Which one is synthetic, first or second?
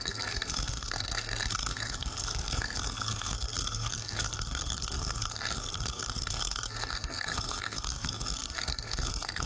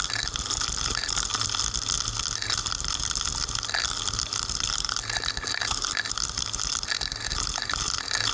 first